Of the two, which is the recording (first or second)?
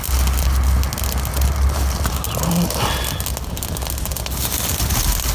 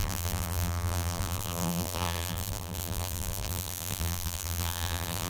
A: first